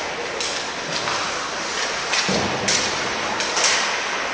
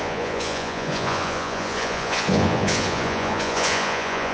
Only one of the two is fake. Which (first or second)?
second